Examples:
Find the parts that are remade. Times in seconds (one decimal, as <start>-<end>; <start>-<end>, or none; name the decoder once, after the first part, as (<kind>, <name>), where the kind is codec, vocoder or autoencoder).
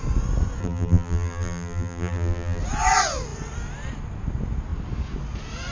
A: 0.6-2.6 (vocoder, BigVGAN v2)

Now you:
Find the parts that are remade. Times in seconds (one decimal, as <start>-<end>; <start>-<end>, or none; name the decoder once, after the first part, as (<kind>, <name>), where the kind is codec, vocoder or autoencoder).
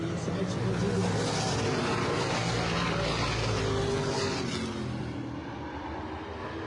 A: 5.4-6.0 (vocoder, BigVGAN v2)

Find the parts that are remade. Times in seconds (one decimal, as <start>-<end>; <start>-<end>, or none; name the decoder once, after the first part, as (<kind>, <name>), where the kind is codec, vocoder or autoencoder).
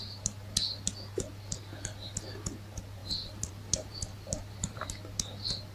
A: 3.0-4.9 (vocoder, BigVGAN v2)